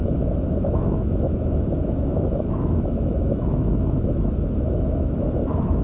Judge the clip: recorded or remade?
remade